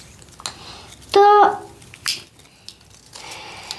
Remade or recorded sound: recorded